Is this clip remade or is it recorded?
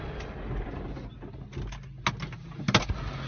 recorded